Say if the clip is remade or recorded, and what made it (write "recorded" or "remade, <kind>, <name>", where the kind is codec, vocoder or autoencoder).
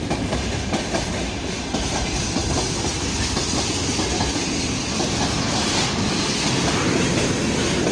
recorded